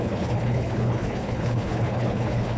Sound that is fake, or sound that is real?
fake